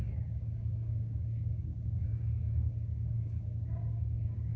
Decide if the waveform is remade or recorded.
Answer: remade